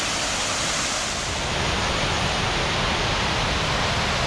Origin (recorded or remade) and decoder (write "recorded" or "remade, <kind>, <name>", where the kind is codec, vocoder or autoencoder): recorded